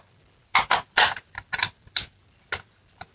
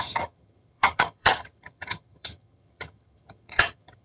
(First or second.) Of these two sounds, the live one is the first